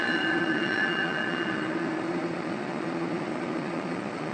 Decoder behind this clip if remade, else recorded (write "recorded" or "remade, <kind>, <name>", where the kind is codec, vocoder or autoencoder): remade, vocoder, Vocos